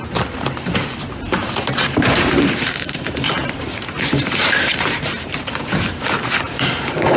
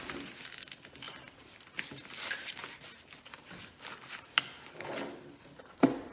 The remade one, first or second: first